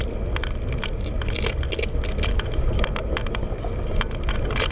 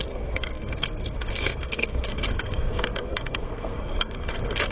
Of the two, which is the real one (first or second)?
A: first